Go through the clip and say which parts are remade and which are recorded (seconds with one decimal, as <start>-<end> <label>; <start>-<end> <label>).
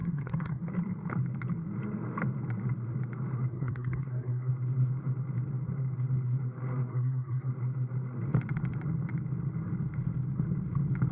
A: 0.0-0.6 remade; 0.6-3.5 recorded; 3.5-4.5 remade; 4.5-6.9 recorded; 6.9-7.5 remade; 7.5-11.1 recorded